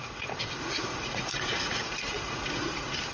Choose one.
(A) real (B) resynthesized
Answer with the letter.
B